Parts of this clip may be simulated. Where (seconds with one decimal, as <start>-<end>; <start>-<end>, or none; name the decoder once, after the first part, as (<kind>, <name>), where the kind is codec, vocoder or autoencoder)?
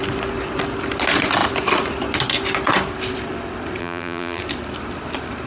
3.8-4.4 (vocoder, BigVGAN v2)